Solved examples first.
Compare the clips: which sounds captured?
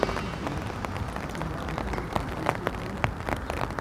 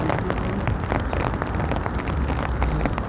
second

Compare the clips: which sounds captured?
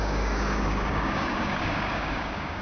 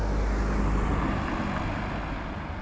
second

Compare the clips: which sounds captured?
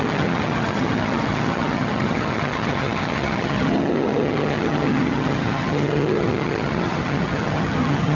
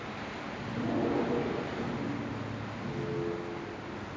second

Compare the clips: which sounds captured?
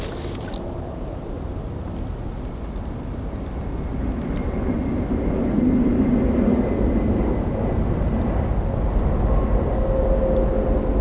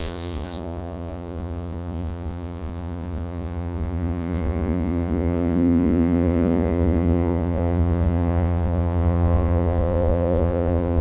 first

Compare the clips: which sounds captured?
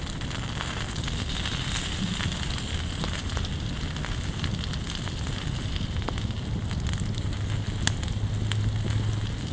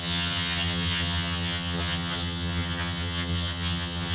first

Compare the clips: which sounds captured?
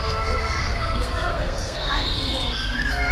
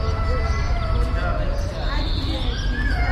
second